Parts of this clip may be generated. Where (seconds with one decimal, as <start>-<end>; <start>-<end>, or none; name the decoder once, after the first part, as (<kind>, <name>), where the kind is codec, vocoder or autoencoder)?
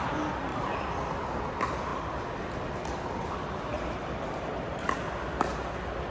none